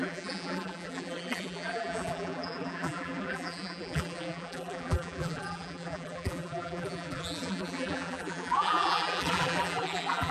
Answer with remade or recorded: remade